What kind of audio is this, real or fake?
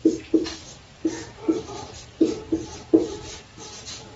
real